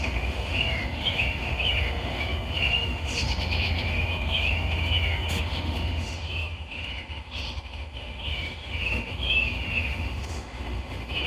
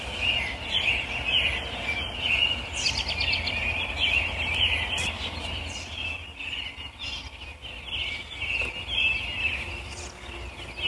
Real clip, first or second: second